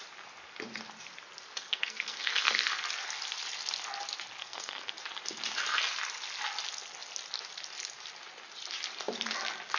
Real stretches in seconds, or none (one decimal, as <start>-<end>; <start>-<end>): 0.0-1.6; 2.7-4.4; 4.9-9.8

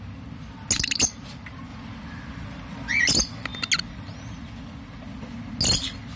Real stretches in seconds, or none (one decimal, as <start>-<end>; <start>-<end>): 0.0-6.2

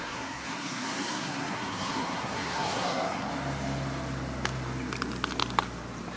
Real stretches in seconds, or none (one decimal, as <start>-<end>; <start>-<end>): 3.3-6.2

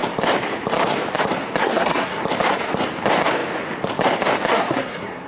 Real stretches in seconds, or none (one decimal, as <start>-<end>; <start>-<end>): 0.0-1.6; 2.2-4.5

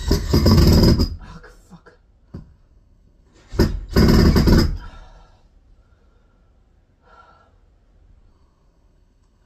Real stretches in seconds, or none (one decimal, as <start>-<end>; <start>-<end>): 0.6-2.3; 3.3-8.3

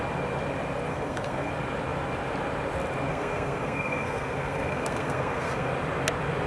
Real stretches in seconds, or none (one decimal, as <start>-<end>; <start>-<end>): 0.0-0.9; 1.5-3.1; 5.7-6.5

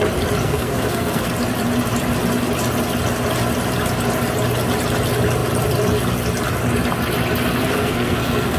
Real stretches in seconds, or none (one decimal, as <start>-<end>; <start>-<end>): 0.0-0.4; 1.3-7.6